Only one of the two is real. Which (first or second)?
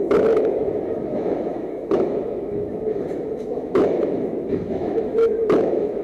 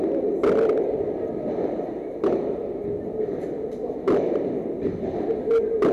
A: second